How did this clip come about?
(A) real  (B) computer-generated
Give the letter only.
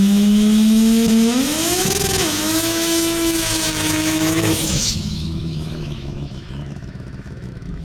B